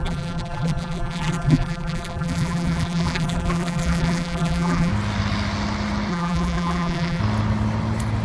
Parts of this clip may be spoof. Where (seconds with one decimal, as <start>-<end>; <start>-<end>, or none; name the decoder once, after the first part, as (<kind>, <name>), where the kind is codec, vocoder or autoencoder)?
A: 0.0-4.9 (vocoder, BigVGAN v2); 6.1-7.2